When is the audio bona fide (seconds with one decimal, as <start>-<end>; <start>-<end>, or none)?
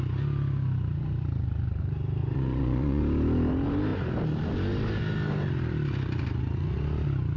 0.0-2.2; 3.0-7.4